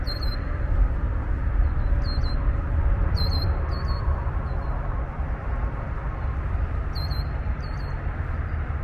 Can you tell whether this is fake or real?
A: fake